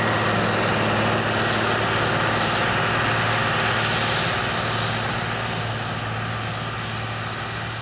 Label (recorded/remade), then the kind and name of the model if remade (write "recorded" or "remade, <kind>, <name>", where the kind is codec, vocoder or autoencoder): recorded